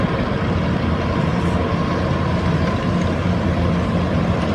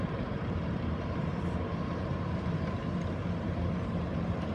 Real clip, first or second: first